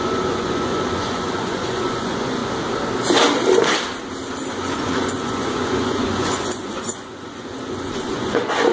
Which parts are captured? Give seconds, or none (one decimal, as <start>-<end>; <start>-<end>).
2.4-4.5